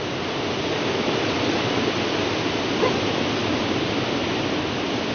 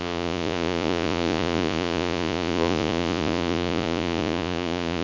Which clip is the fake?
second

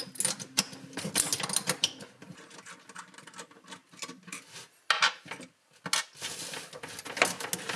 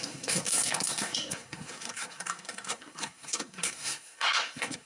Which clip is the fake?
second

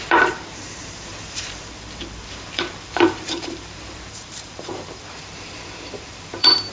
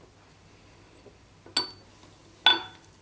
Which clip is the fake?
first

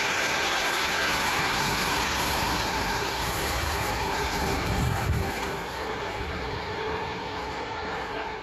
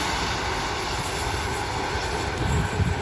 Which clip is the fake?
first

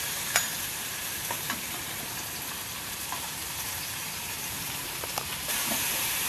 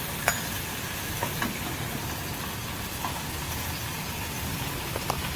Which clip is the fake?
first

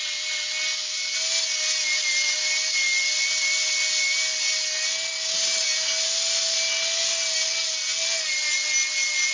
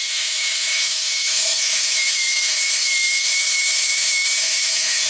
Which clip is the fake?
second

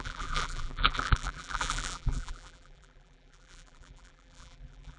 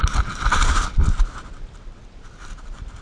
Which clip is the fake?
first